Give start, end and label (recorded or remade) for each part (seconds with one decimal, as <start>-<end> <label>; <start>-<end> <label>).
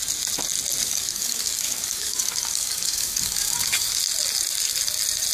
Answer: 0.0-0.8 recorded; 0.8-4.0 remade; 4.0-5.3 recorded